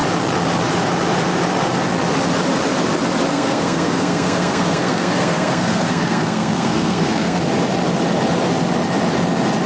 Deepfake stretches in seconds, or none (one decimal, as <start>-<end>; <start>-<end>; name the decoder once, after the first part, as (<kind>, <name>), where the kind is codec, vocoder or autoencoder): 3.3-7.4 (codec, SNAC)